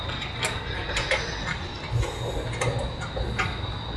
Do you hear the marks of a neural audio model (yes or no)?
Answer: no